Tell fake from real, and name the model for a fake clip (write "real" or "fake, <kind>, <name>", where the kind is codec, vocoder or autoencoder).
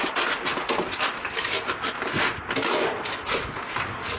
real